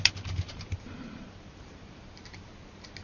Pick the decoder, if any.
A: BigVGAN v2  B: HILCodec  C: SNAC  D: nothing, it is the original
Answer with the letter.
A